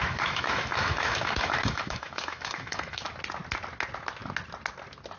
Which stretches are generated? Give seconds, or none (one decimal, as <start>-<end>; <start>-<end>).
0.0-3.1